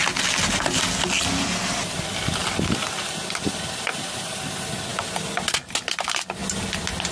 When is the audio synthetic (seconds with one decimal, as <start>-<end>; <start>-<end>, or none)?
2.4-4.4

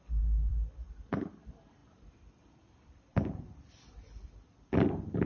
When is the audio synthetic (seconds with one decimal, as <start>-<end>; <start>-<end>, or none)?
0.0-5.3

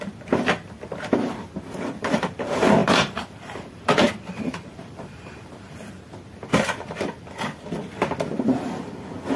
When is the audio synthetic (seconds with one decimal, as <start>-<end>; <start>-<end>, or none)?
2.8-5.9

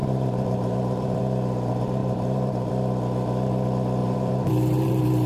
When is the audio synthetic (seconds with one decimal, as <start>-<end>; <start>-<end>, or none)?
0.0-1.2; 2.0-2.7; 4.0-5.3

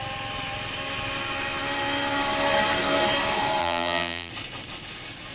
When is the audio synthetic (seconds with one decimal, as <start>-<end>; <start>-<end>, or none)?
3.6-4.3

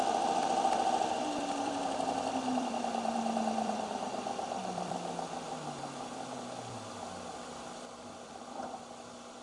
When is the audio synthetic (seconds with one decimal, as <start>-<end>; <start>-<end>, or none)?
0.0-4.6; 6.9-9.4